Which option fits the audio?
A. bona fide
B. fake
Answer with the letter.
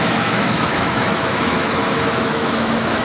B